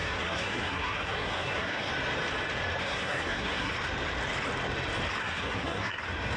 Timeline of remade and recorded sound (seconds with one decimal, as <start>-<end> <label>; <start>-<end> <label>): 0.0-1.9 remade; 1.9-2.8 recorded; 2.8-3.7 remade; 3.7-5.2 recorded; 5.2-6.0 remade; 6.0-6.4 recorded